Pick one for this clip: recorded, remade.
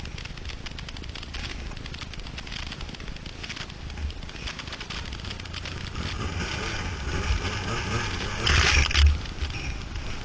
recorded